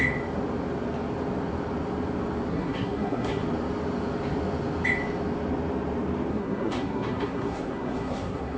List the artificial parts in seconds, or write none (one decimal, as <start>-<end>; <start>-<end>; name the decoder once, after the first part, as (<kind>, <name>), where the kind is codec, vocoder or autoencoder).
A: 2.5-3.4 (codec, SNAC); 6.3-8.6